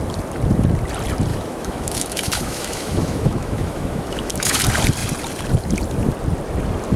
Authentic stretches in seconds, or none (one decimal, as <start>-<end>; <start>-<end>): 0.0-1.3; 4.6-7.0